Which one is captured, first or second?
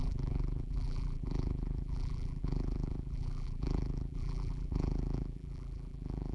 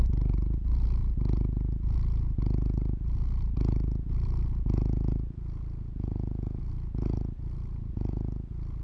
second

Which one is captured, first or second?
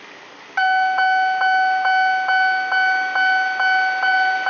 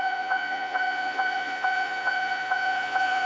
first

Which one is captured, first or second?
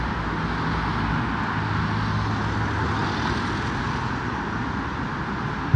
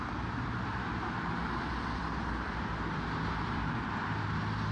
first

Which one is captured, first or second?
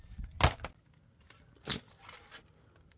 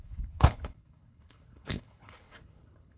first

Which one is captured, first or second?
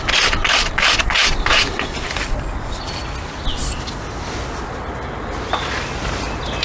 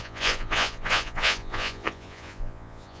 first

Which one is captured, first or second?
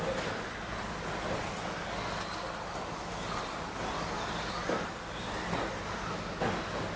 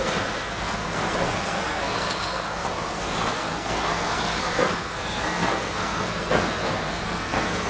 first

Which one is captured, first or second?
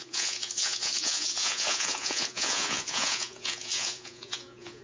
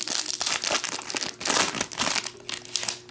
second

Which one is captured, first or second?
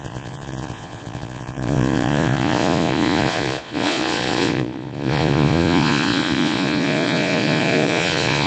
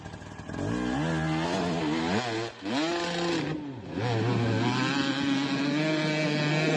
second